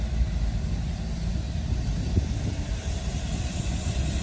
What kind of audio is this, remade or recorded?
recorded